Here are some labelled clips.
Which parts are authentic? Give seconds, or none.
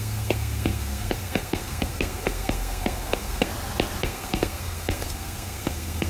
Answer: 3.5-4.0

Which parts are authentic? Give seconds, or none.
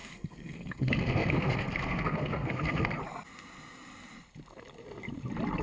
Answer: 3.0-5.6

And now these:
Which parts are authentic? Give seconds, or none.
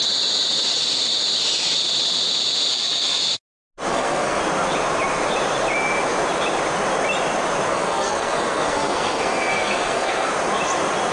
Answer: 0.0-2.7; 3.2-3.9; 4.4-7.7; 10.3-11.1